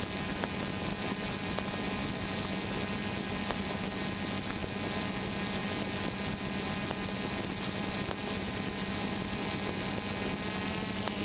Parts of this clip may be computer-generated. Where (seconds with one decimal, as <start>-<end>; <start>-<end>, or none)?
none